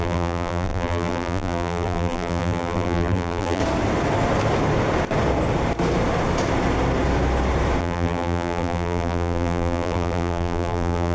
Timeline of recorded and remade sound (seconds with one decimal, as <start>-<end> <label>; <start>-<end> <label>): 0.0-3.6 remade; 3.6-7.8 recorded; 7.8-11.1 remade